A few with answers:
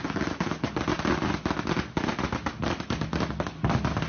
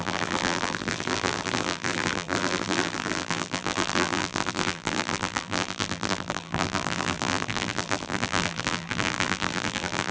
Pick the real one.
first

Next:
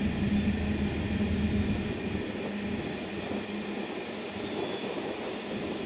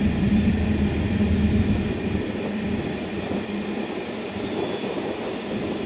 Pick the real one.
first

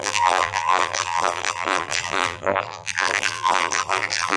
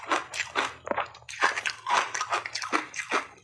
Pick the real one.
second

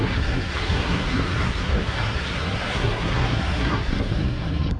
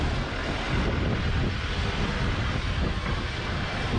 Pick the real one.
second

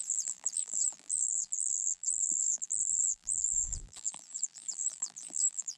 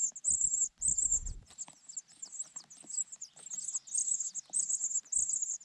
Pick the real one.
second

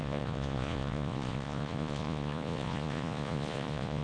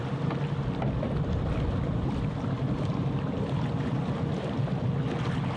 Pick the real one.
second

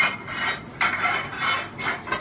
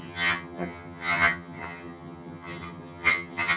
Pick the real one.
first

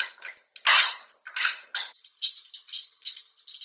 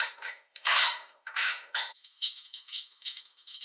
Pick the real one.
first